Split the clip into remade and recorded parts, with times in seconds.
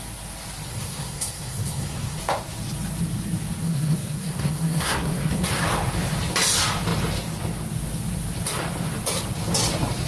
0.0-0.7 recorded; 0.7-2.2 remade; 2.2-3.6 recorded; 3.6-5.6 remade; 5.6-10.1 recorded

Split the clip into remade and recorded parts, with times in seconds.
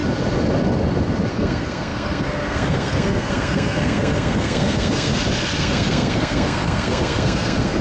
0.0-1.3 recorded; 1.3-5.1 remade; 5.1-5.6 recorded; 5.6-7.8 remade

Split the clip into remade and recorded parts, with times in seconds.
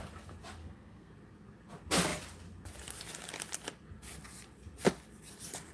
0.0-0.6 recorded; 0.6-1.1 remade; 1.1-5.7 recorded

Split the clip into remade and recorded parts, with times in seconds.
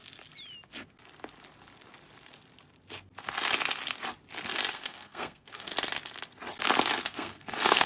0.0-4.7 recorded; 4.7-5.7 remade; 5.7-7.0 recorded; 7.0-7.9 remade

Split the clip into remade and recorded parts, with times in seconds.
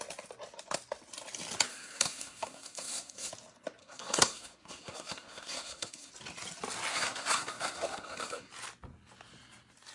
0.0-1.7 recorded; 1.7-3.3 remade; 3.3-3.8 recorded; 3.8-6.1 remade; 6.1-6.9 recorded; 6.9-8.5 remade; 8.5-9.9 recorded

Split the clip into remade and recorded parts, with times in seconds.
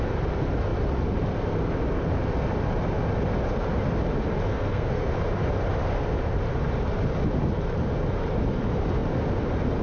0.0-4.5 recorded; 4.5-5.1 remade; 5.1-9.8 recorded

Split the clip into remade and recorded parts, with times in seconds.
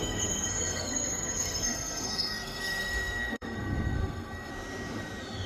0.0-4.5 remade; 4.5-5.5 recorded